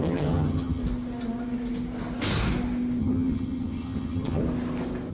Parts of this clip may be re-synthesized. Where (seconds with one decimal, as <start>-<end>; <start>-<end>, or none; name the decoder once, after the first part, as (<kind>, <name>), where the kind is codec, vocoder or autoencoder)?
0.0-0.8 (vocoder, HiFi-GAN); 3.0-4.4